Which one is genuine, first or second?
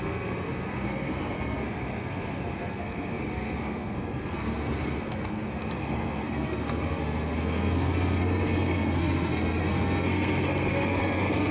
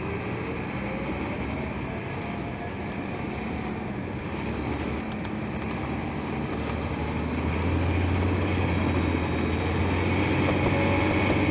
second